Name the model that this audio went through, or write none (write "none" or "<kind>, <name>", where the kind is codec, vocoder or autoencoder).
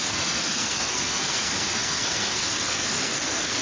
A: codec, SNAC